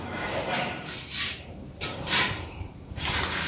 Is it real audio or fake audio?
fake